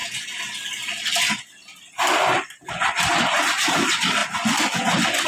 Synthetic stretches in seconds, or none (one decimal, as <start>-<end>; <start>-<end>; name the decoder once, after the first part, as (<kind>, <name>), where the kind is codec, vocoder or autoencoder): none